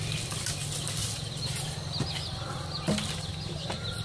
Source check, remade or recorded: recorded